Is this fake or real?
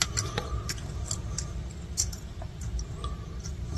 real